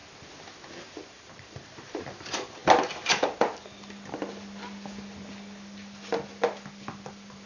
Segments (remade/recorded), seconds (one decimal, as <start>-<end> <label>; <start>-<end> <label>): 0.0-0.8 recorded; 0.8-2.6 remade; 2.6-7.1 recorded; 7.1-7.5 remade